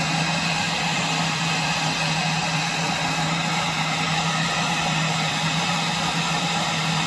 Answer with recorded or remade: recorded